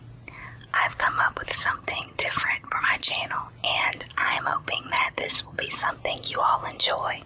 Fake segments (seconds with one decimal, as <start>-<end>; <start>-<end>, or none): 1.5-2.8; 4.1-5.9